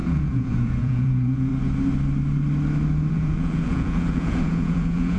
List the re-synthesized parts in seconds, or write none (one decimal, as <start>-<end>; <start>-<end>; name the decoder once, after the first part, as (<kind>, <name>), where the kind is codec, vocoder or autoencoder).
0.0-1.5 (vocoder, Vocos); 3.1-5.2